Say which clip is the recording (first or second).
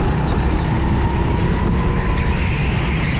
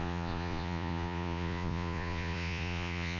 first